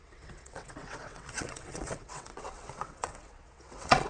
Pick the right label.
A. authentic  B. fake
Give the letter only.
B